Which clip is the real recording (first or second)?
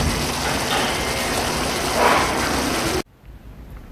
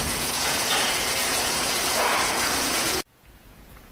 first